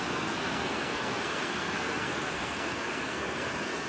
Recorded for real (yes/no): no